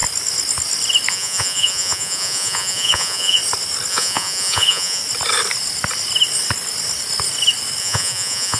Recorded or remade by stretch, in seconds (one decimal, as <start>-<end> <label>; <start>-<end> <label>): 0.0-1.1 recorded; 1.1-3.4 remade; 3.4-3.9 recorded; 3.9-5.0 remade; 5.0-7.8 recorded; 7.8-8.6 remade